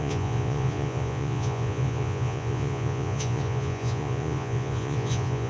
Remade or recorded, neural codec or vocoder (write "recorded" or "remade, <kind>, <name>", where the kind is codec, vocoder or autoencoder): remade, vocoder, Vocos